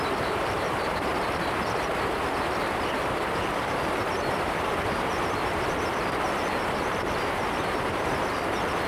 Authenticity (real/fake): fake